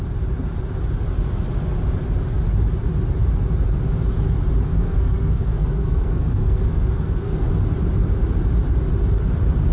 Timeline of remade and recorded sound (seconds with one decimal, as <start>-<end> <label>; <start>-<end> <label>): 0.0-4.7 recorded; 4.7-7.5 remade; 7.5-9.7 recorded